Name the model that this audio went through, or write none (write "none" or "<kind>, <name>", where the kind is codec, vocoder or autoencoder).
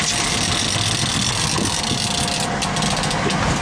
none